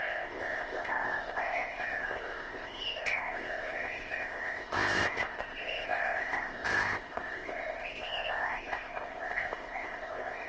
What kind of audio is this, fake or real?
fake